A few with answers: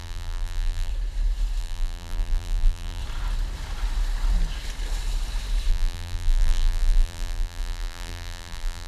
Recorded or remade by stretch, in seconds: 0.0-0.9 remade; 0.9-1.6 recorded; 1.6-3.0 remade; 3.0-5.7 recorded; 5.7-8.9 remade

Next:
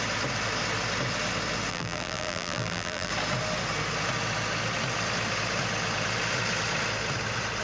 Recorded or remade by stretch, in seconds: 0.0-1.7 recorded; 1.7-3.1 remade; 3.1-7.6 recorded

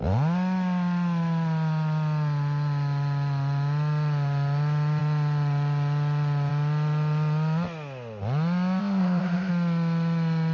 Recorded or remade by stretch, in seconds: 0.0-8.8 recorded; 8.8-9.5 remade; 9.5-10.5 recorded

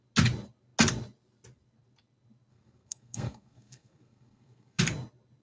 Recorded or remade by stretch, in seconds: 0.0-2.5 recorded; 2.5-4.8 remade; 4.8-5.4 recorded